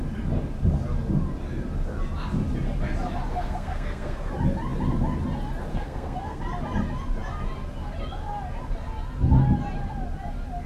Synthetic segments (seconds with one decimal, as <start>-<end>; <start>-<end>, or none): 3.3-4.3; 5.7-6.4